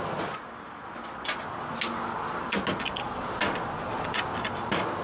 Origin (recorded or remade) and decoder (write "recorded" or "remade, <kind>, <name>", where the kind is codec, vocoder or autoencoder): recorded